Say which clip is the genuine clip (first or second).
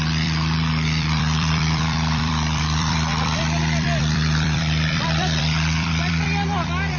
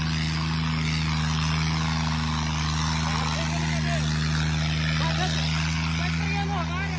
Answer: second